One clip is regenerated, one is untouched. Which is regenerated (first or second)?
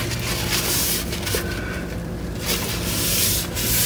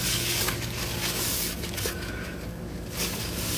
second